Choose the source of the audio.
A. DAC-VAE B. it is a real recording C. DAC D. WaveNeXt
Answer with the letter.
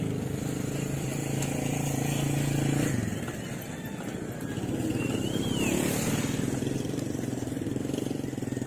B